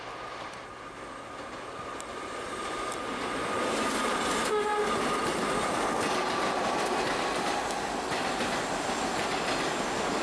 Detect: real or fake real